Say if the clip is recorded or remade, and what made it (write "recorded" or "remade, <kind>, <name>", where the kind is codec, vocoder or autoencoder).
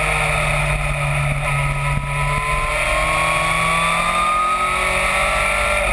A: recorded